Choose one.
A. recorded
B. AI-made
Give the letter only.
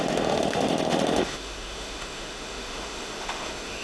B